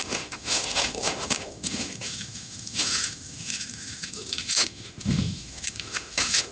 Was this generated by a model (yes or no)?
yes